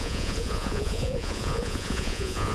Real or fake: fake